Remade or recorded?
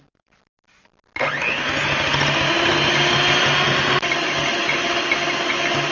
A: recorded